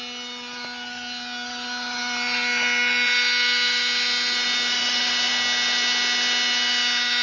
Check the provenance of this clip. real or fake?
real